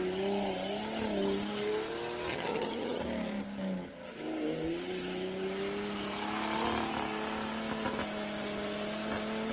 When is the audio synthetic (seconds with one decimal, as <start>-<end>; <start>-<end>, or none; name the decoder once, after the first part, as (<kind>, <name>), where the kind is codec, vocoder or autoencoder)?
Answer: 2.3-3.0 (vocoder, HiFi-GAN)